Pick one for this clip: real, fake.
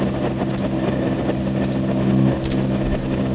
real